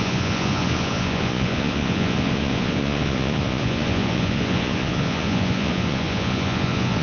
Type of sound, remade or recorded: remade